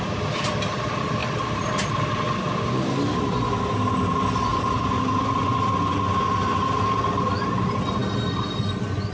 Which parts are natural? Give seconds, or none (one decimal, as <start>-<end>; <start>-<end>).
0.0-1.2; 2.0-4.5; 5.4-6.1; 6.8-9.1